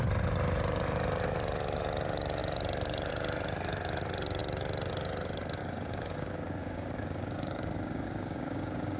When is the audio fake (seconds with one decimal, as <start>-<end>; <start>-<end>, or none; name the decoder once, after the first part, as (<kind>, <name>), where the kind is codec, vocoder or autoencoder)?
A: 5.6-9.0 (codec, DAC)